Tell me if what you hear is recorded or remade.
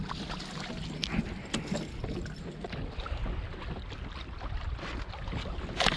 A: recorded